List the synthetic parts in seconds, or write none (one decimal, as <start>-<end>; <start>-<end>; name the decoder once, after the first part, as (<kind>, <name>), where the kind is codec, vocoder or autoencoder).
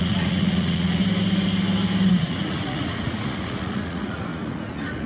0.0-1.0 (vocoder, Vocos); 2.1-5.1